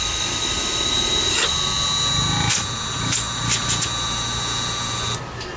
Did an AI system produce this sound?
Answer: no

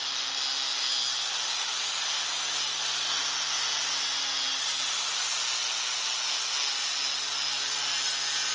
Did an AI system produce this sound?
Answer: no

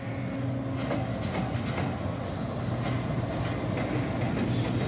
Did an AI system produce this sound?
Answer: no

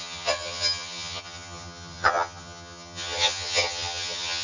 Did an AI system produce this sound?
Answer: yes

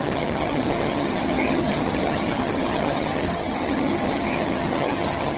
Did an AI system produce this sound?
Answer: yes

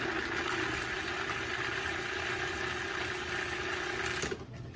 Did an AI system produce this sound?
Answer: no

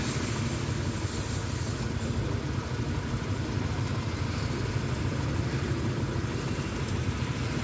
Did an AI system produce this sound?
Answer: no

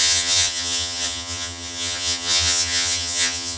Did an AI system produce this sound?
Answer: yes